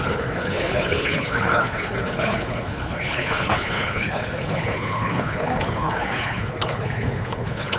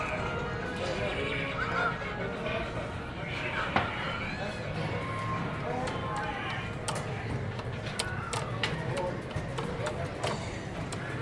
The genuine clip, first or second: second